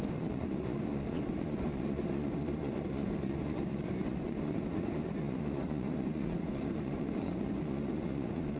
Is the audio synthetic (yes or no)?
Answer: yes